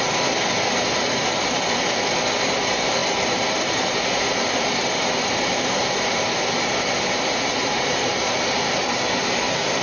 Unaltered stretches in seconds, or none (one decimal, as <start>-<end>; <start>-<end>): 0.0-3.0; 6.3-7.6; 8.1-9.8